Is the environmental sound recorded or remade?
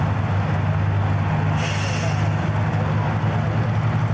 recorded